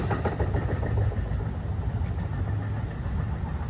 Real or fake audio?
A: real